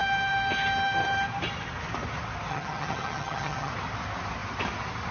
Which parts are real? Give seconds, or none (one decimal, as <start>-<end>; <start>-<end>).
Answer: 0.0-2.5; 3.7-5.1